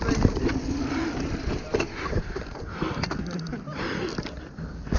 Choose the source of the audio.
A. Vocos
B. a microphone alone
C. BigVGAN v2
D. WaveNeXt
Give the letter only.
C